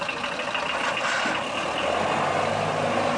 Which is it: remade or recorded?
recorded